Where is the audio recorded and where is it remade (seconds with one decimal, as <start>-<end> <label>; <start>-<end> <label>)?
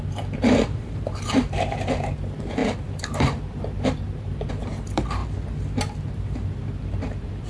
0.0-5.2 remade; 5.2-5.8 recorded; 5.8-7.5 remade